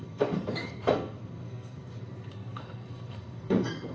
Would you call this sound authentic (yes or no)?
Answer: no